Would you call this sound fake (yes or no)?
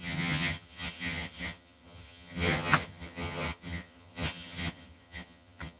yes